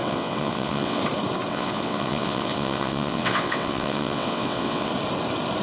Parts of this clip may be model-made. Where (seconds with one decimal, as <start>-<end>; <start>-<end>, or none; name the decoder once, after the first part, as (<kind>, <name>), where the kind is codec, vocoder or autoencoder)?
0.0-1.0 (vocoder, WaveNeXt); 1.5-4.9